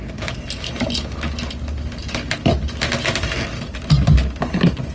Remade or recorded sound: recorded